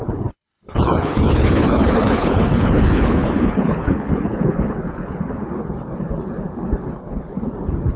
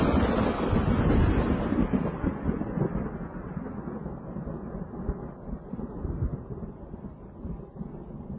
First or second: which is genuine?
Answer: second